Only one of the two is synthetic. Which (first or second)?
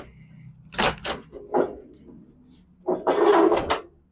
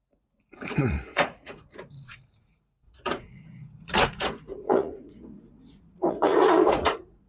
second